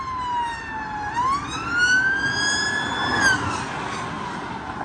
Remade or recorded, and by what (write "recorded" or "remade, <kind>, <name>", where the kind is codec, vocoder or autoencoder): recorded